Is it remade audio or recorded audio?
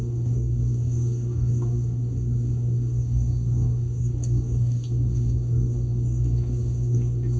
remade